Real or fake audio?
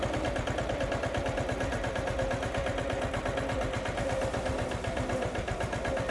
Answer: real